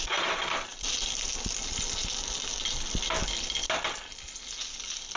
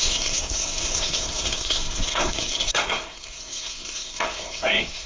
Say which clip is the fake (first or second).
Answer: second